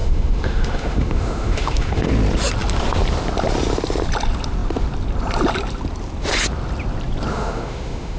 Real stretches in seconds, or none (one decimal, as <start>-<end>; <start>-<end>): 2.1-7.3